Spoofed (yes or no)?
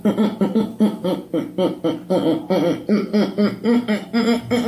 no